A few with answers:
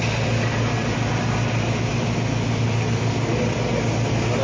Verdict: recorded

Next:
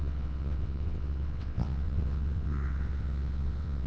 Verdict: remade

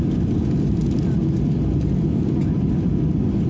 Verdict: recorded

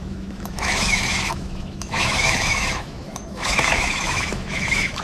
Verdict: remade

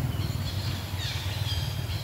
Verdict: recorded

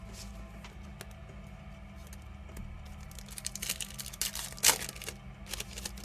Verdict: recorded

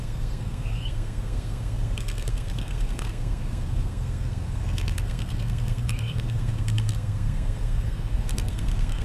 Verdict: remade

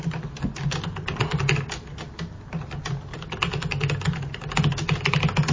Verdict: recorded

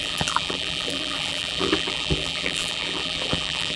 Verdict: remade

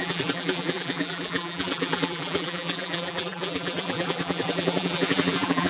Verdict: remade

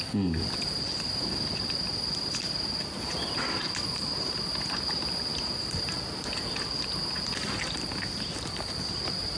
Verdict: recorded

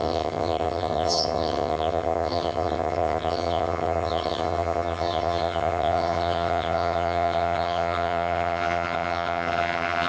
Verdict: remade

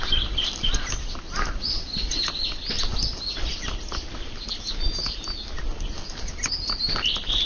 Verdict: recorded